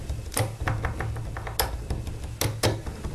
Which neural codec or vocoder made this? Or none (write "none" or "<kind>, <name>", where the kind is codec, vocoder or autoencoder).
none